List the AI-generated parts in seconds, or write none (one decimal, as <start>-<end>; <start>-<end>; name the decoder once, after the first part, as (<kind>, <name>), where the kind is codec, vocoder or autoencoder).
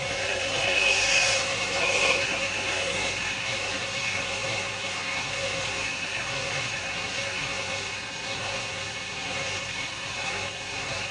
0.0-11.1 (codec, SNAC)